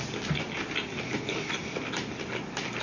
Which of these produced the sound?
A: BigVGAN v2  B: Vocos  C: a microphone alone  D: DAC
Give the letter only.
C